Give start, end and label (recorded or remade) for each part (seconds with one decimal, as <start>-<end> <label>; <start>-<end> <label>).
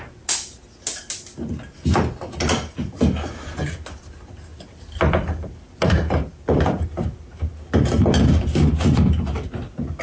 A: 0.0-10.0 recorded